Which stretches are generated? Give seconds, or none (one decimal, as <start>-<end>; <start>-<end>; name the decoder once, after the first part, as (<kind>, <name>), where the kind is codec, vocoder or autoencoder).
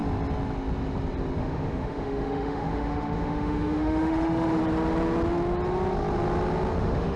1.4-4.6 (autoencoder, DAC-VAE); 6.8-7.2